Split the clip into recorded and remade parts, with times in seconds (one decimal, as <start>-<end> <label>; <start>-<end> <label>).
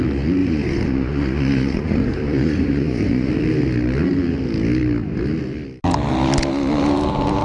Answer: 0.0-0.4 recorded; 0.4-3.3 remade; 3.3-7.4 recorded